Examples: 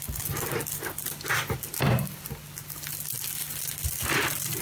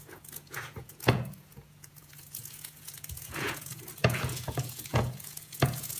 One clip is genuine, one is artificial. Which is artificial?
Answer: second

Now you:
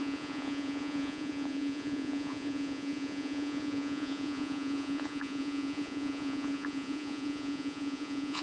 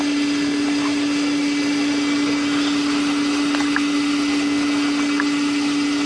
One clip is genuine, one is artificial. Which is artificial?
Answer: first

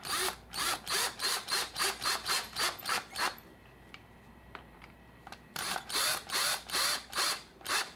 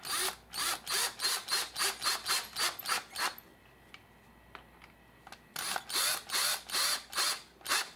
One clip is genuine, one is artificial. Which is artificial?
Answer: first